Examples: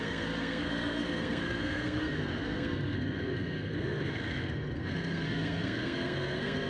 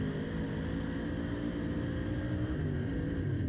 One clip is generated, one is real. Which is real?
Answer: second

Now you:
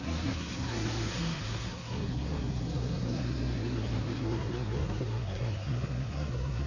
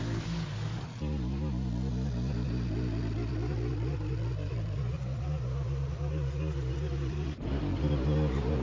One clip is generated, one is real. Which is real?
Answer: second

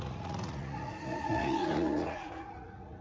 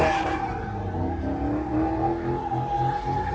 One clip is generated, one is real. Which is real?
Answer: second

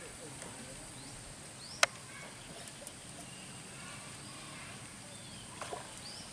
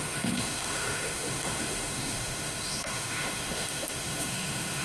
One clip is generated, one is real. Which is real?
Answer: first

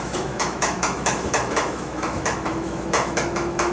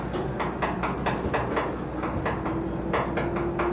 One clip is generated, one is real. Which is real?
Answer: second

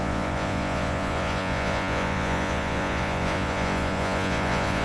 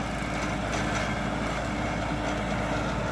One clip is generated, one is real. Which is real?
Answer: second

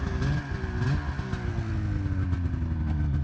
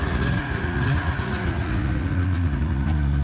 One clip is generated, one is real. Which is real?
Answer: first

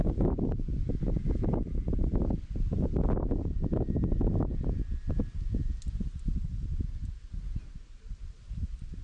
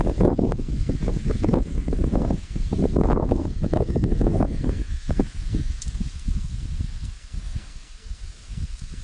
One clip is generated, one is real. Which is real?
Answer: first